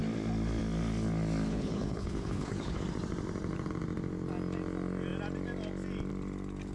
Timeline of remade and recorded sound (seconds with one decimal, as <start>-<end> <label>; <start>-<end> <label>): 0.0-1.5 recorded; 1.5-2.8 remade; 2.8-6.7 recorded